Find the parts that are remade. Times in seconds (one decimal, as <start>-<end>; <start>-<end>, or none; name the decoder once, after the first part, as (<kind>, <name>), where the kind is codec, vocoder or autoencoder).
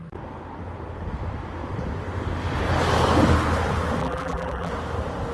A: 4.0-4.7 (vocoder, BigVGAN v2)